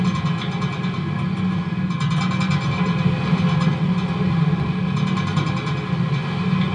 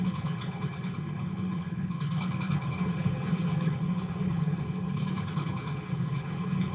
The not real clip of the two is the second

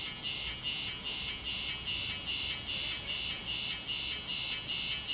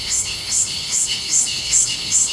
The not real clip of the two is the second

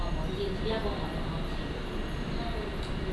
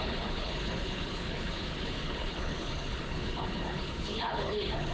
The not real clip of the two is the second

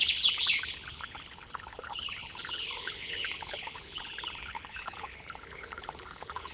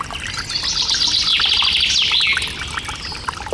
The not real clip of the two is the first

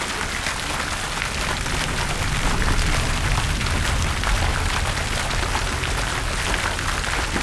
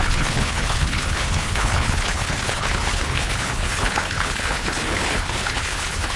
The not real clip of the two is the second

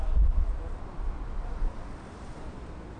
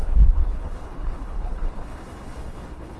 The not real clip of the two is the second